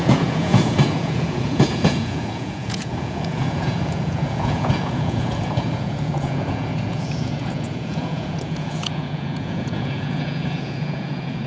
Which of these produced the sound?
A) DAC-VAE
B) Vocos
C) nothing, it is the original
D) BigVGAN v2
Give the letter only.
B